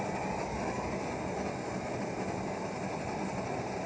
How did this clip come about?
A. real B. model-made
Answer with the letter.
A